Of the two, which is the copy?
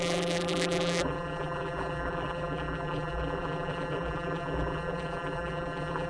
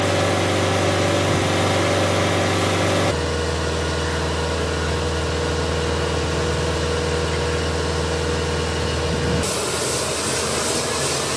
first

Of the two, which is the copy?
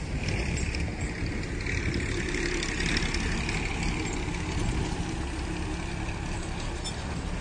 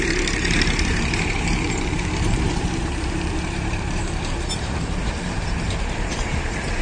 second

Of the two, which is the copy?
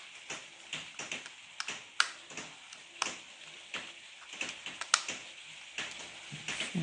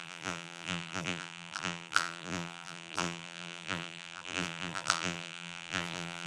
second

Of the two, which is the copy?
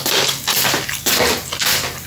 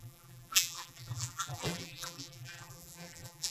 second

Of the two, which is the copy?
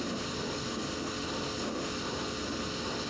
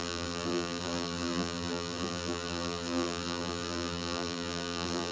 second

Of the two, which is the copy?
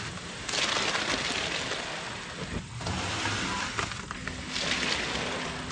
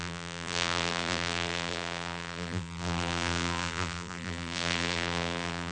second